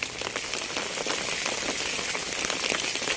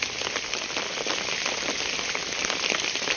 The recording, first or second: first